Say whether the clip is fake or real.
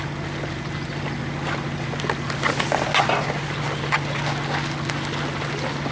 real